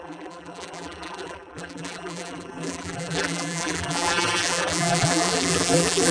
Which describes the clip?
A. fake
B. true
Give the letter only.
A